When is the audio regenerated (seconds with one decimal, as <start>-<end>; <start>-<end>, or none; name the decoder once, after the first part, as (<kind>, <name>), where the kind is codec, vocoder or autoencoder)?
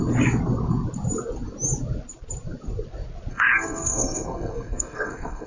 3.3-5.5 (codec, SNAC)